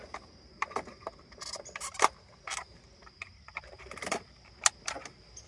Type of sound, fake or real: real